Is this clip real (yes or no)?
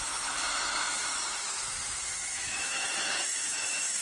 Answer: no